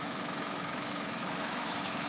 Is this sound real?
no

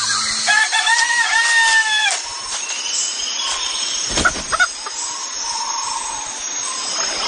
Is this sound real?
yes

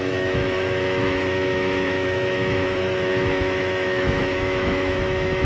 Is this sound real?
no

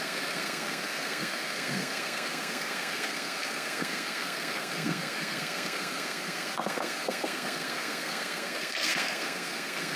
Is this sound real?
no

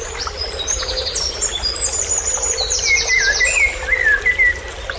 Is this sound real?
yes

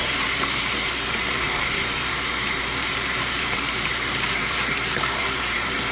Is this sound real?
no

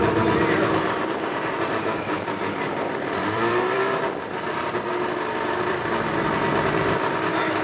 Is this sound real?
no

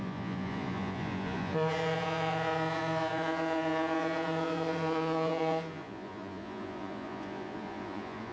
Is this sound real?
no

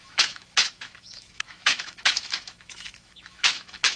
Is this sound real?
no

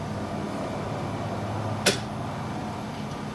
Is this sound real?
yes